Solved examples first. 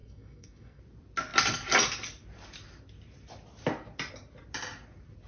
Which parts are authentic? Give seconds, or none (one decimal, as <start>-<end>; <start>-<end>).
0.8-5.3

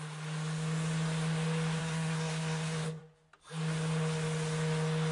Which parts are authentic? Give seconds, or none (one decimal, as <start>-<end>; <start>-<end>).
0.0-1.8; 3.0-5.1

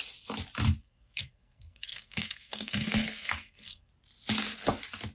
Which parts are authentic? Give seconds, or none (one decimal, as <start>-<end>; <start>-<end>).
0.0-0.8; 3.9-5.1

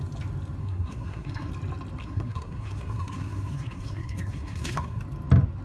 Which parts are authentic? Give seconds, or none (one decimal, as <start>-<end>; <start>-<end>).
0.0-0.6; 1.5-2.0; 5.0-5.6

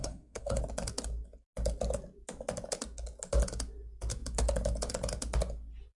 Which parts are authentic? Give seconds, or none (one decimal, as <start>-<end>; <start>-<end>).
0.6-6.0